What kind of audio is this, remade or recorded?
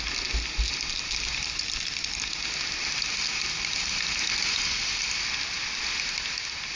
recorded